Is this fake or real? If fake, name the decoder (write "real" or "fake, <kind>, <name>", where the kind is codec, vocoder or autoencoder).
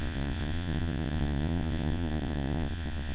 fake, vocoder, Vocos